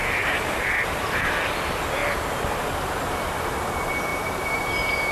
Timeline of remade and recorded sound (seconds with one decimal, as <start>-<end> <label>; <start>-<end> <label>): 0.0-1.0 remade; 1.0-4.1 recorded; 4.1-5.1 remade

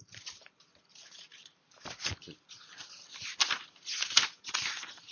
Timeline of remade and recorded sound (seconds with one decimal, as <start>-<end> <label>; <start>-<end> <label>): 0.0-1.3 remade; 1.3-4.4 recorded; 4.4-5.1 remade

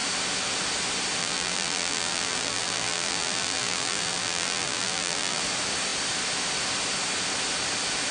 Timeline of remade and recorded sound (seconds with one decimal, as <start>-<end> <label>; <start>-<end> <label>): 0.0-1.2 recorded; 1.2-5.4 remade; 5.4-8.1 recorded